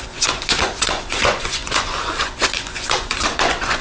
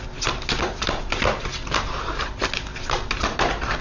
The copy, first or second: first